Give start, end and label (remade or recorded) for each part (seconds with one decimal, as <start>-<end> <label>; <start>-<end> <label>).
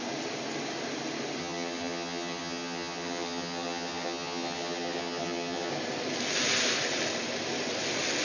0.0-1.4 recorded; 1.4-5.7 remade; 5.7-8.2 recorded